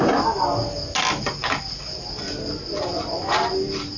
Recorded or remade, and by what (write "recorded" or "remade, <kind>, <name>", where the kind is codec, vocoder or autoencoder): recorded